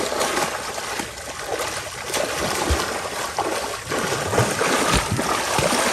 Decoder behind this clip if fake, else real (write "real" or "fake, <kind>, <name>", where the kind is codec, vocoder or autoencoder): real